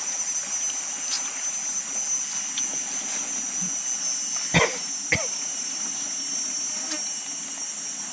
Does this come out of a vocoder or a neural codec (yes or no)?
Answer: no